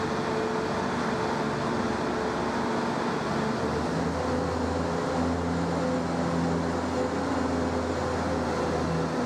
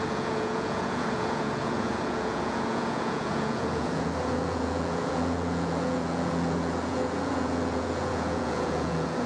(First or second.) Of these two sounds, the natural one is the first